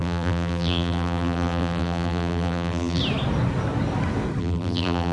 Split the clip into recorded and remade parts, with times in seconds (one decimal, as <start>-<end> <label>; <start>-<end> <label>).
0.0-3.0 remade; 3.0-4.4 recorded; 4.4-5.1 remade